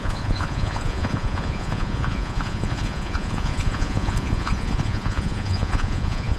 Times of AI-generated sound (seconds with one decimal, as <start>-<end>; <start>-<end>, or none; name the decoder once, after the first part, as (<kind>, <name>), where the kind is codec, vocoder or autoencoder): 0.0-6.4 (vocoder, Vocos)